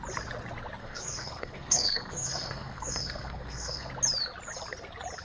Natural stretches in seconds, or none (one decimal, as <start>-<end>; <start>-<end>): 0.0-0.8; 3.9-5.2